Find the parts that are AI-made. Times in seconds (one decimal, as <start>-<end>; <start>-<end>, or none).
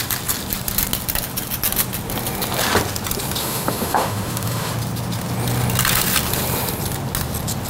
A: 3.4-4.7